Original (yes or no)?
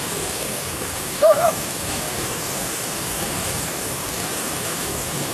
no